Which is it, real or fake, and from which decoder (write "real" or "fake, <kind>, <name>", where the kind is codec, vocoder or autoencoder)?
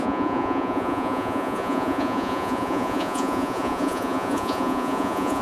fake, vocoder, Vocos